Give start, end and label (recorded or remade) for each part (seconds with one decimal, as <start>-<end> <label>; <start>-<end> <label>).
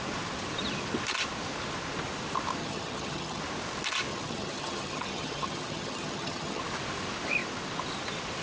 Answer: 0.0-2.6 recorded; 2.6-3.4 remade; 3.4-4.1 recorded; 4.1-6.6 remade; 6.6-8.4 recorded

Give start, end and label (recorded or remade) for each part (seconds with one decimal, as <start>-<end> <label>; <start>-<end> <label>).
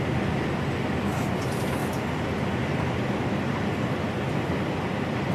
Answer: 0.0-5.3 recorded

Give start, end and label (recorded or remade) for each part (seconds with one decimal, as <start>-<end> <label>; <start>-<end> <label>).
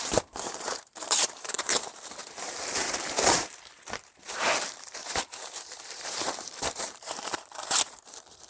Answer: 0.0-8.5 remade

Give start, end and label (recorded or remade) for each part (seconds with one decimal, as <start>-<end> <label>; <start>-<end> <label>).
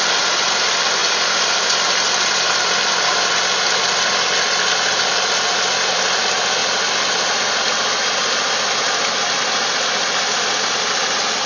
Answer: 0.0-11.5 recorded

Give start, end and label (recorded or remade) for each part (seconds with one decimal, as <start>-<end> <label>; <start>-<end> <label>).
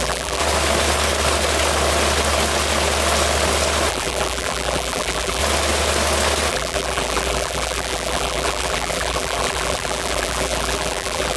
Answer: 0.0-0.4 remade; 0.4-3.9 recorded; 3.9-5.4 remade; 5.4-6.5 recorded; 6.5-11.4 remade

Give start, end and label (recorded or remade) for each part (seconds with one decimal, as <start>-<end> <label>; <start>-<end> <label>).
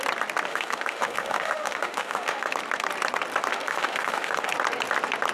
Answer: 0.0-0.5 recorded; 0.5-2.5 remade; 2.5-3.5 recorded; 3.5-4.5 remade; 4.5-5.3 recorded